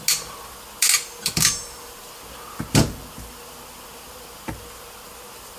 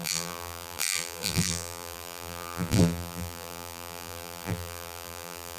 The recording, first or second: first